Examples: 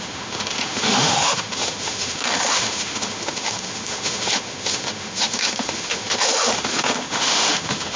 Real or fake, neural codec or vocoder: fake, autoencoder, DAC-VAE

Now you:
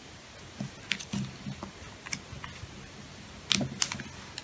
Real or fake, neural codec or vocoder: real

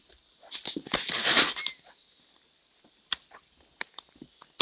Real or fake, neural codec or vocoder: real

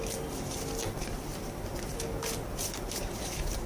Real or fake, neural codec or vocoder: real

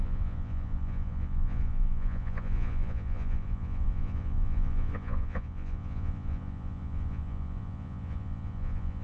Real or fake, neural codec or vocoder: fake, vocoder, Vocos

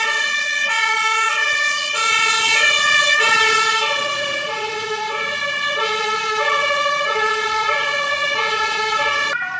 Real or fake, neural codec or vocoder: fake, vocoder, Vocos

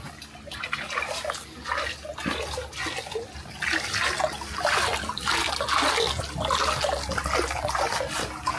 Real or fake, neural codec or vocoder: real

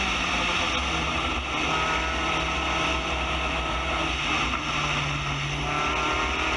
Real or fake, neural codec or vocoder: real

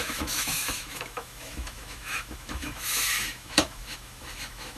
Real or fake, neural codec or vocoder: fake, autoencoder, DAC-VAE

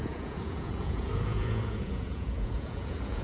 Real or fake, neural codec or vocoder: fake, vocoder, Vocos